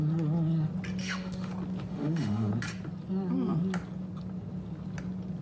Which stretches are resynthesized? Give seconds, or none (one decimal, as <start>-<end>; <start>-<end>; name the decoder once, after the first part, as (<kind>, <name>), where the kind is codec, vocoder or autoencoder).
1.0-1.5 (autoencoder, DAC-VAE); 1.9-2.5